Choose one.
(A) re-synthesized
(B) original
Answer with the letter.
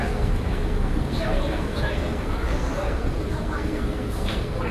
A